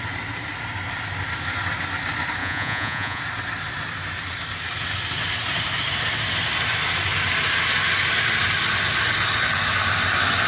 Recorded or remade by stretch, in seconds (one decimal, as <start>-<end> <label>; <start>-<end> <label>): 0.0-2.4 recorded; 2.4-3.2 remade; 3.2-10.5 recorded